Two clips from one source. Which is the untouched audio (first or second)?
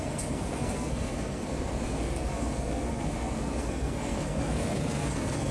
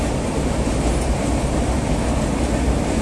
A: second